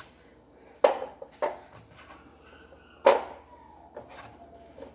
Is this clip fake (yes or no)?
no